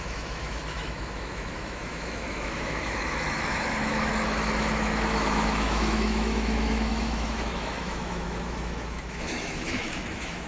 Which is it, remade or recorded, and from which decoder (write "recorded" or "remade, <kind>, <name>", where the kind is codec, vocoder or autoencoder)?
remade, autoencoder, DAC-VAE